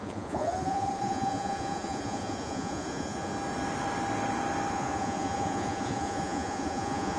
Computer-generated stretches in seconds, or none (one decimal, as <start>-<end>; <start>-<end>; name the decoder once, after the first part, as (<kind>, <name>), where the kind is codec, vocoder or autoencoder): 0.0-3.3 (vocoder, Vocos); 4.7-7.2